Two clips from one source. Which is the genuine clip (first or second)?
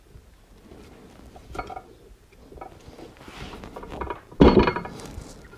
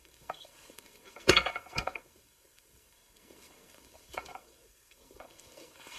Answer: first